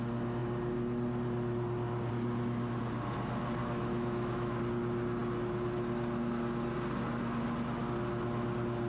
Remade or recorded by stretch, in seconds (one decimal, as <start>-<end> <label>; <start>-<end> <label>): 0.0-3.6 recorded; 3.6-4.6 remade; 4.6-8.9 recorded